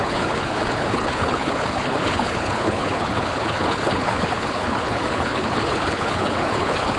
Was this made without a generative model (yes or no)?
no